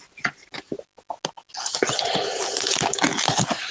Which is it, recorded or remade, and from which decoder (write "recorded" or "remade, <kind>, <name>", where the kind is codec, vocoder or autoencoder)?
recorded